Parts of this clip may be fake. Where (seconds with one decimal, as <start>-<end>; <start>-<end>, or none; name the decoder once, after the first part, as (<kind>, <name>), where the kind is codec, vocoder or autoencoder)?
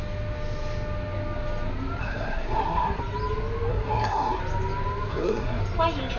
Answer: 2.0-3.0 (codec, SNAC); 3.7-4.4; 5.1-5.6